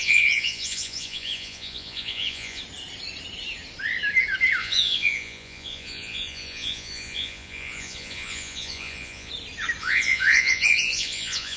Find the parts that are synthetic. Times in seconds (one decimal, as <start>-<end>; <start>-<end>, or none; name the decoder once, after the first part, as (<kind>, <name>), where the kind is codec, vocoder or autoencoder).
0.0-2.6 (vocoder, Vocos); 4.6-9.3; 9.8-11.6